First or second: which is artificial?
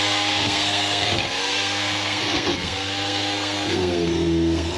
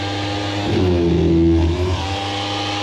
first